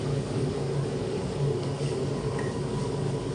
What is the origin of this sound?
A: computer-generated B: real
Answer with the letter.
A